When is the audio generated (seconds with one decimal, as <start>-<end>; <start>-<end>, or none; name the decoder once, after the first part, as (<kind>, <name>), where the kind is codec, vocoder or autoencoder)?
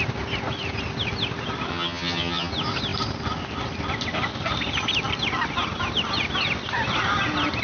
1.7-2.5 (vocoder, HiFi-GAN)